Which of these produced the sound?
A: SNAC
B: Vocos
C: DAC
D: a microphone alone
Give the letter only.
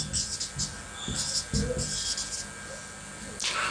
D